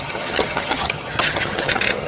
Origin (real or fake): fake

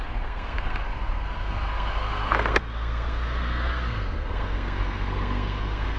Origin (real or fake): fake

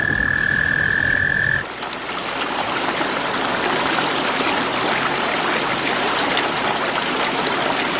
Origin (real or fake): real